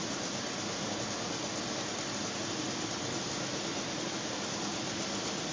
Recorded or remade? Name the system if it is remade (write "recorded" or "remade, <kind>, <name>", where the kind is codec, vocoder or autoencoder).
recorded